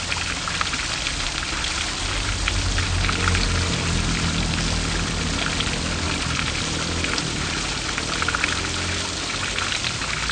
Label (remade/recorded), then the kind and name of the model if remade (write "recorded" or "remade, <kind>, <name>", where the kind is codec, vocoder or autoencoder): recorded